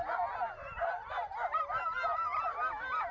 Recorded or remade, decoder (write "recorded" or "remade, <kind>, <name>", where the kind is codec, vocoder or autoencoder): recorded